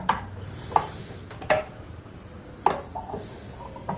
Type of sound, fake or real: real